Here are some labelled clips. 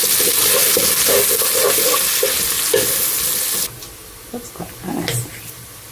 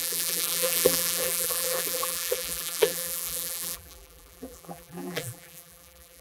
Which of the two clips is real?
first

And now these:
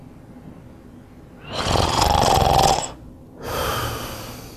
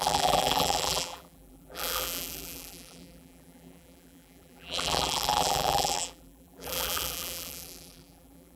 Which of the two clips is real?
first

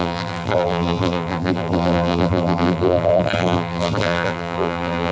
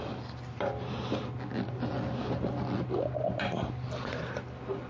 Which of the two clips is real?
second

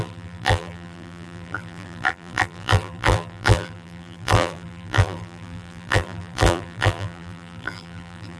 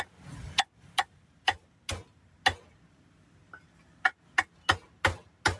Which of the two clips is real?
second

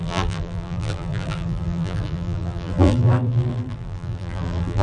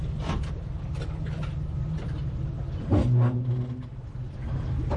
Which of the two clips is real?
second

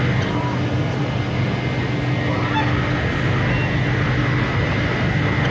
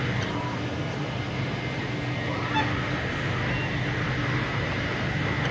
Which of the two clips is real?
first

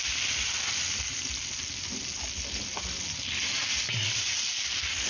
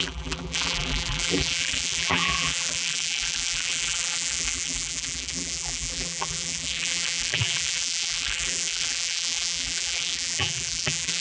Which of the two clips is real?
first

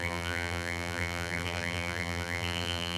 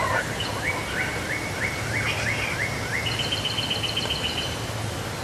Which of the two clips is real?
second